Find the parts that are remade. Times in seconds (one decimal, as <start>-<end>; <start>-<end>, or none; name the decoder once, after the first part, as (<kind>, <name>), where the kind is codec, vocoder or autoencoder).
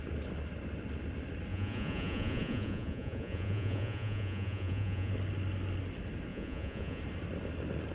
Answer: 1.5-5.1 (vocoder, Vocos); 6.3-7.0